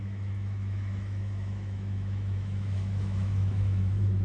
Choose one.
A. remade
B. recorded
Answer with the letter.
A